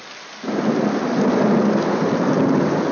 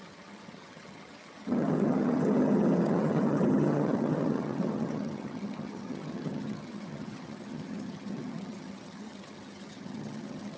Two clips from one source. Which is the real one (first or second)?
first